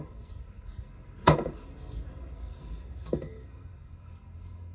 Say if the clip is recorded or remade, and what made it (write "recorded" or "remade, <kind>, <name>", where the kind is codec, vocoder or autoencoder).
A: remade, codec, SNAC